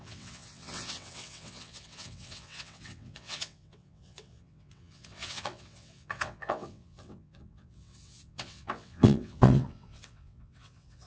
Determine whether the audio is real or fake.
fake